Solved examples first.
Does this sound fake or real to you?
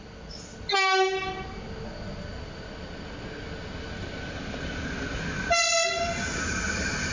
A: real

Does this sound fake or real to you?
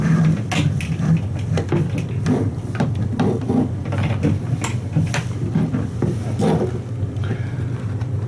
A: real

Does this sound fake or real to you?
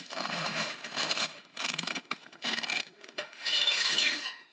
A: fake